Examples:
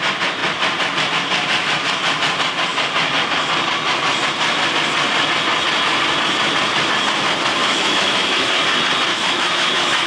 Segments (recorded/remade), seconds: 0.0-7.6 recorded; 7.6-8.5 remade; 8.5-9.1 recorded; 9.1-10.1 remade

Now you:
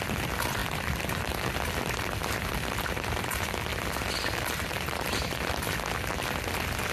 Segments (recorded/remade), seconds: 0.0-6.9 recorded